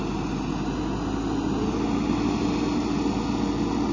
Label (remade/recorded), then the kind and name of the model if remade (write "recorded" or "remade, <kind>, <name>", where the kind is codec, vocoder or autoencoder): recorded